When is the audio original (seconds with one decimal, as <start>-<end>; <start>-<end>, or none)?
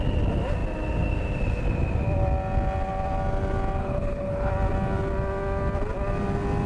0.0-3.8; 4.5-6.7